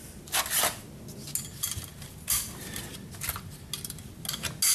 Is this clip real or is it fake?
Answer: real